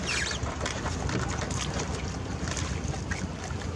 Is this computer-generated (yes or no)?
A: no